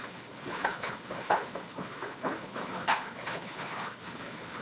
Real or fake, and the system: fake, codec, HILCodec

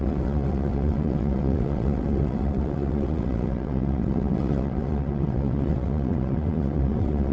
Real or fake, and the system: fake, vocoder, WaveNeXt